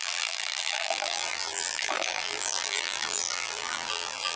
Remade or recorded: remade